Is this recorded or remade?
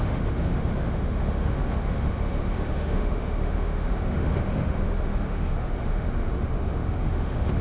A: remade